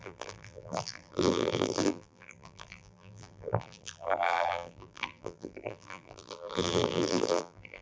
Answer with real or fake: fake